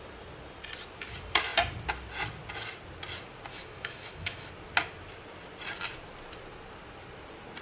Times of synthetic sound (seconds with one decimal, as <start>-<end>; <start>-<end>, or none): 3.5-4.5